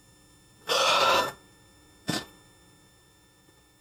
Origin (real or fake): real